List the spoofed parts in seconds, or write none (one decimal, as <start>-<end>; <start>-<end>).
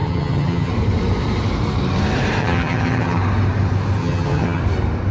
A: 0.0-0.7; 2.4-3.2; 4.0-4.6